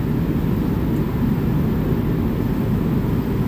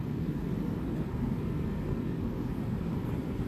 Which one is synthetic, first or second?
second